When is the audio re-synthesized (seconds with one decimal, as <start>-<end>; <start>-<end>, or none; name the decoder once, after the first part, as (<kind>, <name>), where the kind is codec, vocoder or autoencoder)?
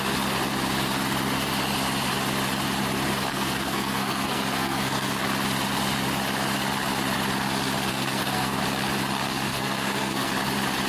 3.3-5.2 (codec, SNAC); 7.9-8.6; 9.5-10.3